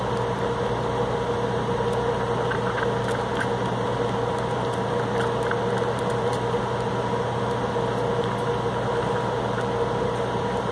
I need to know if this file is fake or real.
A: real